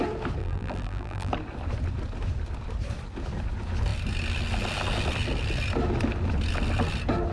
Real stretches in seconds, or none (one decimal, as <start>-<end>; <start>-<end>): 0.0-0.4; 1.3-7.3